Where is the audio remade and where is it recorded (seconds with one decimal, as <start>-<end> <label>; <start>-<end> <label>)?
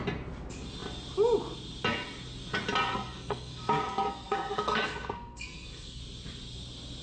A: 0.0-2.9 recorded; 2.9-6.0 remade; 6.0-7.0 recorded